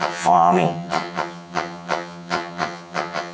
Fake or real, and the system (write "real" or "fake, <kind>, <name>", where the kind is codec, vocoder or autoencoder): fake, vocoder, HiFi-GAN